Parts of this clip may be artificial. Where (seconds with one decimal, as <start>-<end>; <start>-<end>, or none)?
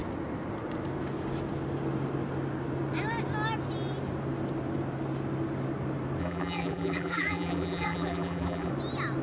6.2-8.7